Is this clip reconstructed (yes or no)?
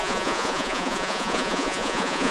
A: yes